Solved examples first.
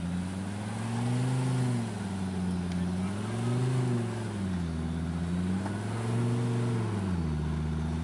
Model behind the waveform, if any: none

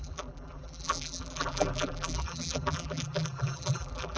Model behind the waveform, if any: vocoder, BigVGAN v2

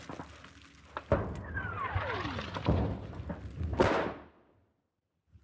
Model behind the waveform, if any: none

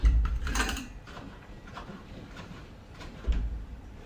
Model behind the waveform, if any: vocoder, BigVGAN v2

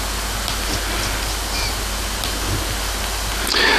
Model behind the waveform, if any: none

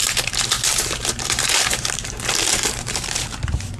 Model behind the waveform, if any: vocoder, BigVGAN v2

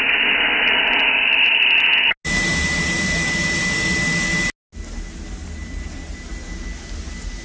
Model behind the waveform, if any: none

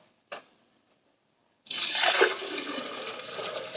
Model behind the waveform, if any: none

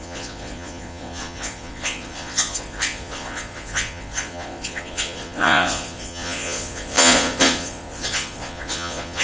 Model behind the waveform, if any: vocoder, Vocos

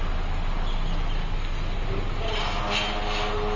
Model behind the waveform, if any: none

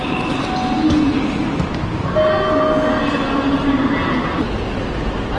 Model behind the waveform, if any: none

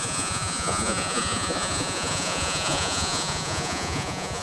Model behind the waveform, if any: vocoder, Vocos